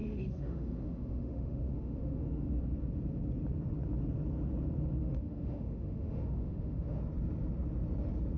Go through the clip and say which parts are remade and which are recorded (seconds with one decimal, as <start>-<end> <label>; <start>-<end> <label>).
0.0-2.6 remade; 2.6-5.0 recorded; 5.0-7.0 remade; 7.0-8.4 recorded